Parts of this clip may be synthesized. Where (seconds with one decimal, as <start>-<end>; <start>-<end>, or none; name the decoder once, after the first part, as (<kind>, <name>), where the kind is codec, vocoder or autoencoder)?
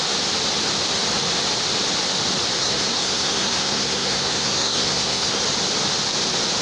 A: 2.6-5.4 (codec, SNAC)